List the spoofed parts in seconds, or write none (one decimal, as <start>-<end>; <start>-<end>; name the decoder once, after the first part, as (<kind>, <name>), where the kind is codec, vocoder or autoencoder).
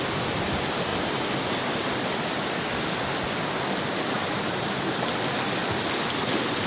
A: none